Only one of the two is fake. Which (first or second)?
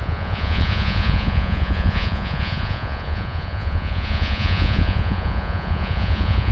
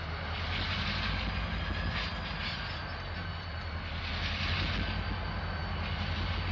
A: first